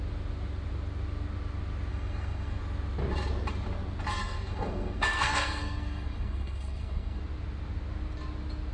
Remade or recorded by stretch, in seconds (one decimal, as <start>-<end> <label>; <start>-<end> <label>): 0.0-1.9 recorded; 1.9-2.6 remade; 2.6-4.2 recorded; 4.2-7.2 remade; 7.2-8.7 recorded